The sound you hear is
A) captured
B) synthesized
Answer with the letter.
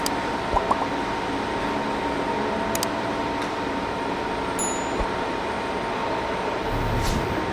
A